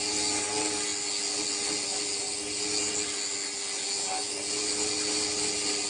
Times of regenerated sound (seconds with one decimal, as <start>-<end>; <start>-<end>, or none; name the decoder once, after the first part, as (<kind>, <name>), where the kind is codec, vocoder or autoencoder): none